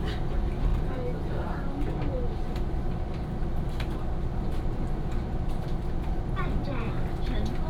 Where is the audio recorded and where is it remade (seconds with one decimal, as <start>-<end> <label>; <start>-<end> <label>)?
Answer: 0.0-7.7 recorded